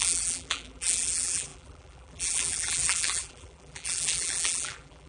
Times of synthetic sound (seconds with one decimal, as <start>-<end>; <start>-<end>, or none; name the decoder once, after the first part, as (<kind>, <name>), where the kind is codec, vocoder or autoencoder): 0.0-5.1 (vocoder, BigVGAN v2)